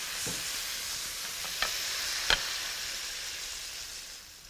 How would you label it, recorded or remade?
recorded